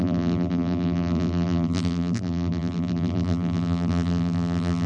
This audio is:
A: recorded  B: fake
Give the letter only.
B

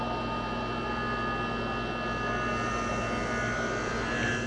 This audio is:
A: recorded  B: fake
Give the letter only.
A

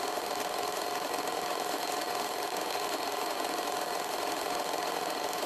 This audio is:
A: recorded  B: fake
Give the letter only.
B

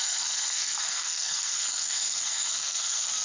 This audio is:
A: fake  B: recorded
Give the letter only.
A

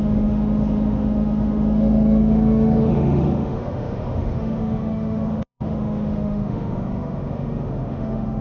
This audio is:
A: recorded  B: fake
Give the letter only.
B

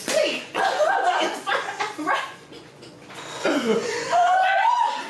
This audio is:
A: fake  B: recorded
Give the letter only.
A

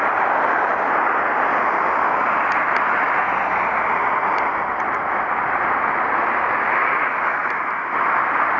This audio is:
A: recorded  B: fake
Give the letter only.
A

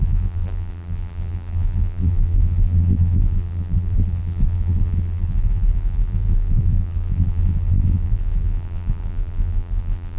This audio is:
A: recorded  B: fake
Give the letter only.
B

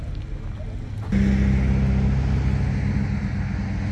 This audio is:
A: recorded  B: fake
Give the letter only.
A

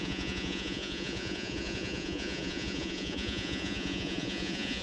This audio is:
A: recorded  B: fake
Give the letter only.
B